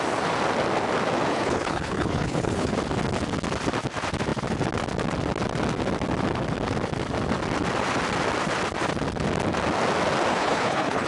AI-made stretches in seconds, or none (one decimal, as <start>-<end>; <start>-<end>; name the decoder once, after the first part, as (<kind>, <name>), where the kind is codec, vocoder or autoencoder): 1.3-2.7 (codec, HILCodec); 10.3-11.1